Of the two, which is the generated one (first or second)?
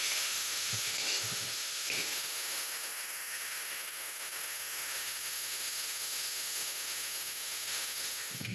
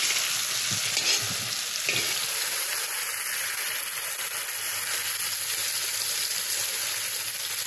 first